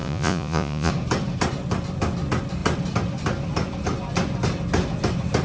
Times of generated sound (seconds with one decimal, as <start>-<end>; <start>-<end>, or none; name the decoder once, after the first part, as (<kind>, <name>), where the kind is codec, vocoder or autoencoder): 0.0-0.9 (vocoder, Vocos)